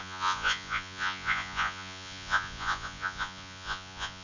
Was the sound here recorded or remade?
remade